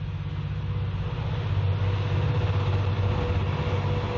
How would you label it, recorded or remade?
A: recorded